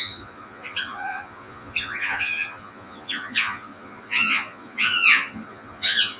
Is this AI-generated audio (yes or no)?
yes